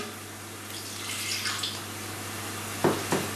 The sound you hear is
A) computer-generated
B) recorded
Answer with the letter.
B